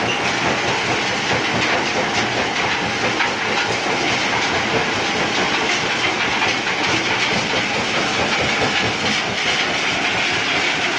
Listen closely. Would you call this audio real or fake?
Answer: real